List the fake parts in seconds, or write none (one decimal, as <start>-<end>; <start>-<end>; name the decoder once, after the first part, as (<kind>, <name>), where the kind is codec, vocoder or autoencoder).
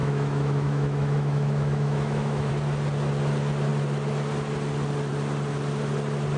0.0-2.5 (autoencoder, DAC-VAE)